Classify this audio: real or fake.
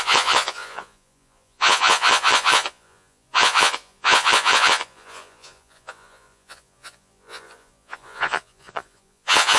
fake